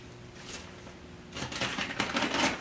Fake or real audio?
real